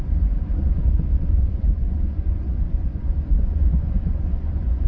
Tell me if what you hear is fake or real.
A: fake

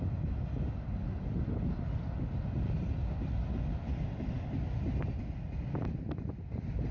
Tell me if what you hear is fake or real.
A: real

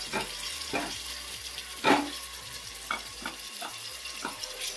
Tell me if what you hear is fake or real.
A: real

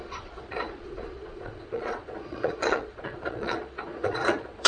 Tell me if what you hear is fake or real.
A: fake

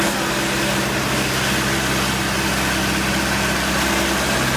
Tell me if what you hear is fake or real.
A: real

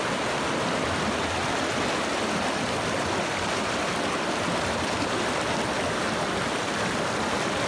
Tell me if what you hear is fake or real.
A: real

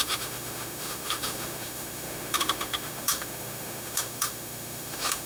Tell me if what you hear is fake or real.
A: fake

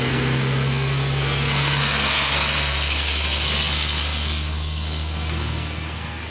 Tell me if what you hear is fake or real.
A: fake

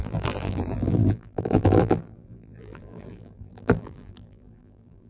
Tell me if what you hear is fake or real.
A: fake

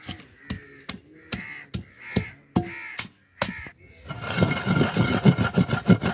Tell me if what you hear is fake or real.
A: real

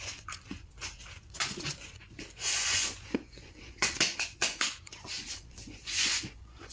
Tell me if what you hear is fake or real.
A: fake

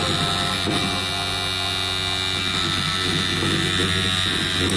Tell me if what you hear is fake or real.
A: real